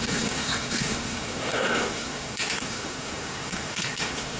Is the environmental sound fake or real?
fake